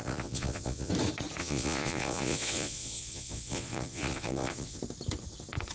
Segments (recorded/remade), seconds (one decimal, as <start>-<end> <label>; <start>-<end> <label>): 0.0-0.9 remade; 0.9-1.4 recorded; 1.4-4.8 remade; 4.8-5.7 recorded